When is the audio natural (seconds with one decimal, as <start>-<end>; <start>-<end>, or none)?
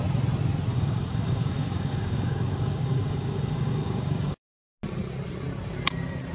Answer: 0.0-0.7; 4.5-6.3